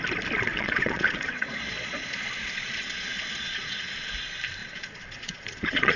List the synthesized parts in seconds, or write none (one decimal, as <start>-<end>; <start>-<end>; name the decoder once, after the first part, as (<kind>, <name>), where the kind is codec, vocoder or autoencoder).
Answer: 0.5-4.1 (vocoder, Vocos); 4.6-6.0